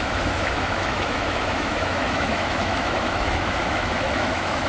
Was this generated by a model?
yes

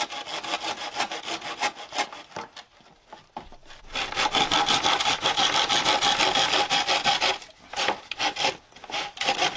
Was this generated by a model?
no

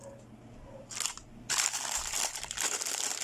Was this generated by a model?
yes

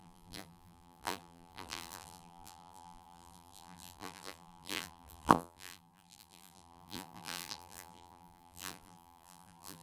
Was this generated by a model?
yes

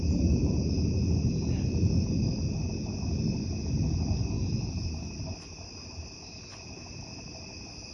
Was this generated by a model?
no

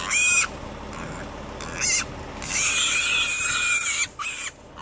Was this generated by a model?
no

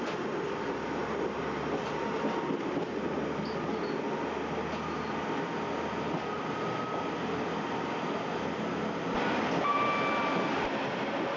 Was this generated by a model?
no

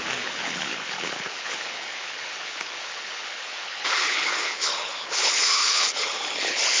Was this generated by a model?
yes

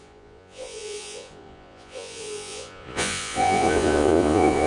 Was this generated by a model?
yes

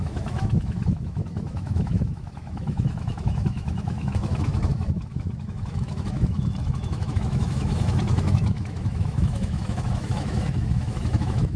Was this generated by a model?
yes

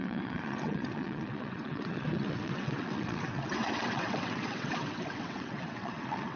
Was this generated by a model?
yes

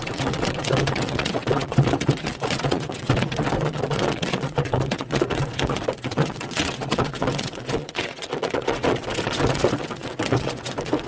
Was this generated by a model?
yes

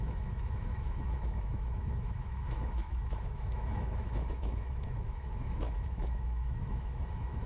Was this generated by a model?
yes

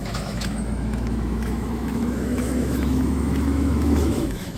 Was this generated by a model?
yes